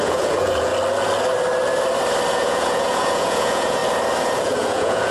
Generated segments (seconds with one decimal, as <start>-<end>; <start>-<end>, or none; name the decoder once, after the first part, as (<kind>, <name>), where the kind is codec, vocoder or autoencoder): 0.0-0.7 (vocoder, Vocos); 2.3-3.8; 4.4-5.1